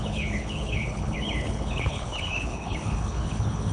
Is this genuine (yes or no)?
no